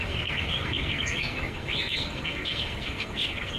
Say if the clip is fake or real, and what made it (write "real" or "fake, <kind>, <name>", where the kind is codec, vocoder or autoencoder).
fake, codec, SNAC